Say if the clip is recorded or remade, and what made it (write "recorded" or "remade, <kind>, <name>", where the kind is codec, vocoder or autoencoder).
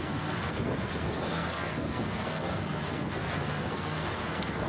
remade, codec, SNAC